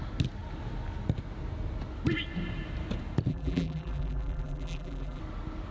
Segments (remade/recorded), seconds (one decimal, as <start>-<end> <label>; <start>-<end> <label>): 0.0-3.3 recorded; 3.3-5.2 remade; 5.2-5.7 recorded